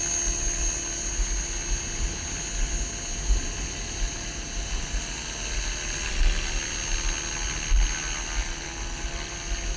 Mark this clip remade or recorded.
recorded